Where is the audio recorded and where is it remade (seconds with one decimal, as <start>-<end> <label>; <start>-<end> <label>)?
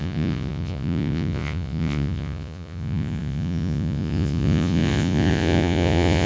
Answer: 0.0-6.3 remade